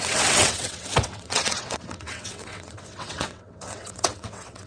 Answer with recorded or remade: remade